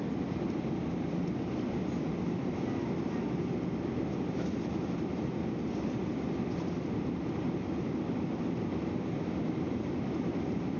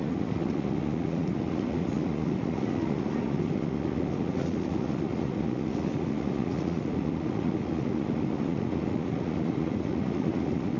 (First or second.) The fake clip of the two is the second